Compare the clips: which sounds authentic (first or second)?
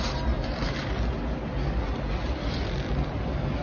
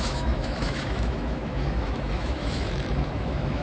first